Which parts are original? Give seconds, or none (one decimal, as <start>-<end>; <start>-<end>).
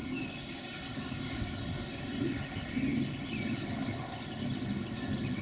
1.4-5.4